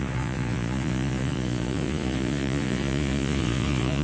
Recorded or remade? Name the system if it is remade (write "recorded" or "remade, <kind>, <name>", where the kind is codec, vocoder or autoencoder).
remade, vocoder, Vocos